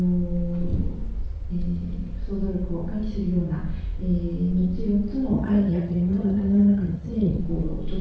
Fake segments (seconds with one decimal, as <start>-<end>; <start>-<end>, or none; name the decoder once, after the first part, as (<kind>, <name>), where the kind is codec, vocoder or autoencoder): 5.3-7.4 (vocoder, HiFi-GAN)